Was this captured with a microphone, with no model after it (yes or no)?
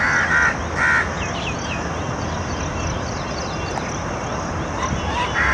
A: yes